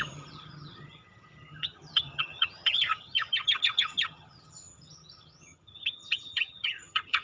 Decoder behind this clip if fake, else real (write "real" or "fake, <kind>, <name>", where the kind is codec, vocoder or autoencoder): fake, vocoder, HiFi-GAN